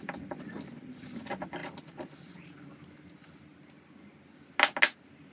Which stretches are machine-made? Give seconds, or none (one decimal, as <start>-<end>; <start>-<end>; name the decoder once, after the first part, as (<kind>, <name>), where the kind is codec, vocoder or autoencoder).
none